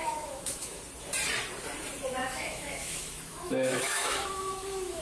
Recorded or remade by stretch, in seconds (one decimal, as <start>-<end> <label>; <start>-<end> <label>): 0.0-0.8 remade; 0.8-2.2 recorded; 2.2-5.0 remade